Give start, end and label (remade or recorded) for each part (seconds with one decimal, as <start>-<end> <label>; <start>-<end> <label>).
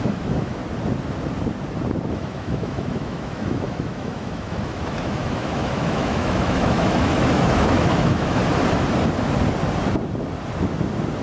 0.0-0.6 remade; 0.6-2.1 recorded; 2.1-8.4 remade; 8.4-11.2 recorded